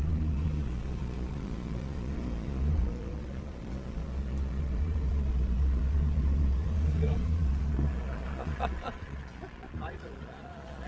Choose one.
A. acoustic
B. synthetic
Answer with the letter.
B